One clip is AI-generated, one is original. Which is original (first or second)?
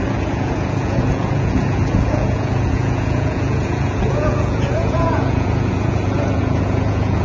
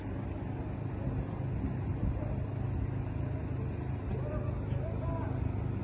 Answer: second